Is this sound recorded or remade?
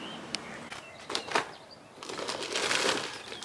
recorded